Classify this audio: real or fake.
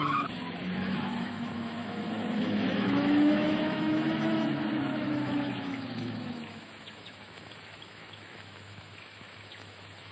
fake